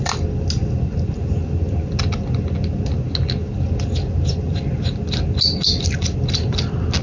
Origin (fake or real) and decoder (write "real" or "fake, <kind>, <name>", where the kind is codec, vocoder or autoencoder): real